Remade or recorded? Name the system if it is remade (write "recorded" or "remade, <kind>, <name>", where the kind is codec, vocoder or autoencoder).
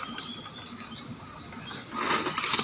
recorded